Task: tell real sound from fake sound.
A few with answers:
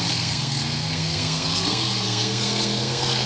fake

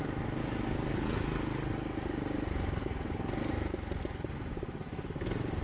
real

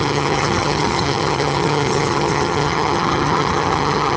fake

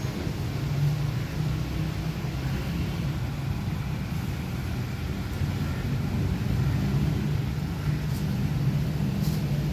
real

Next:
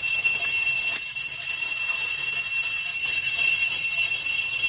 real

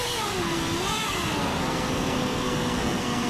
fake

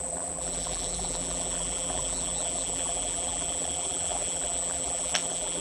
fake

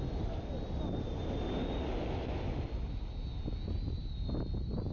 real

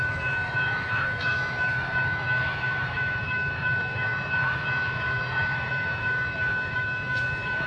fake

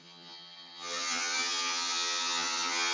fake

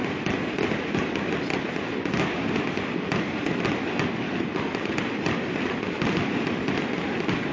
real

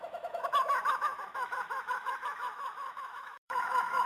fake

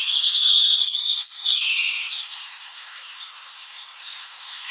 fake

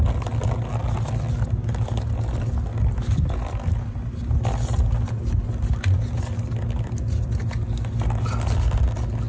real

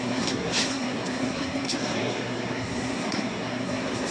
fake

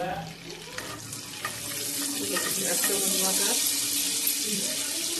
real